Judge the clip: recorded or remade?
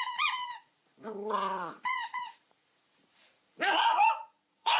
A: remade